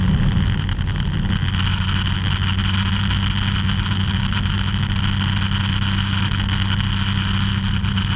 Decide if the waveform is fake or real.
real